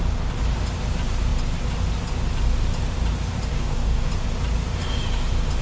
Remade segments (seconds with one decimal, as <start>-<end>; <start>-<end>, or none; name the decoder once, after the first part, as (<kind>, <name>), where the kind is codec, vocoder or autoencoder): 3.5-4.1 (codec, DAC)